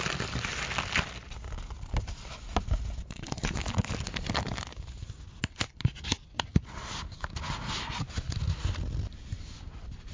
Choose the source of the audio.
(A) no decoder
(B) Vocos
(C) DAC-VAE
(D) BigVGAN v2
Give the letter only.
A